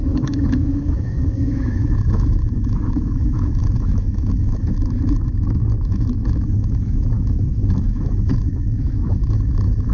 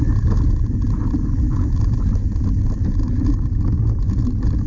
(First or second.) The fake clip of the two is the first